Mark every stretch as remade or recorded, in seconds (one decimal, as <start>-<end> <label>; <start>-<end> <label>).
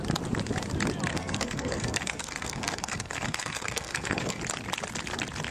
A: 0.0-1.1 recorded; 1.1-4.4 remade; 4.4-5.5 recorded